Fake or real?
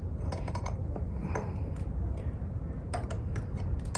real